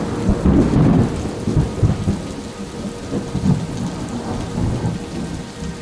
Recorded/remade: recorded